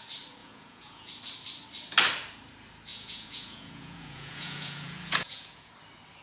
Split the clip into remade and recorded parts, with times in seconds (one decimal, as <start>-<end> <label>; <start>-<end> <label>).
0.0-0.4 recorded; 0.4-1.1 remade; 1.1-2.9 recorded; 2.9-5.7 remade; 5.7-6.2 recorded